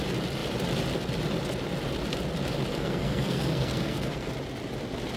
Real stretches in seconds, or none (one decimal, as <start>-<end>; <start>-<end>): 0.0-2.7; 4.3-5.2